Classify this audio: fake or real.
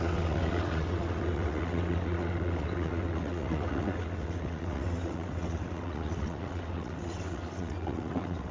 fake